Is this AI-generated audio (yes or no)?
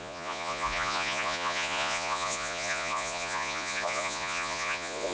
yes